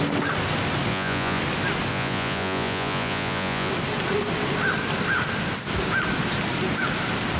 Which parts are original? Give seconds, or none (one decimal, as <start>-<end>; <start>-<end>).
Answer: 0.0-0.9; 1.4-1.9; 3.7-7.4